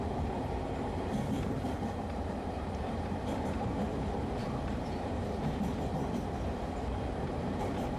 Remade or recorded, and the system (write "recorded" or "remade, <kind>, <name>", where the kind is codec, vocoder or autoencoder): remade, vocoder, BigVGAN v2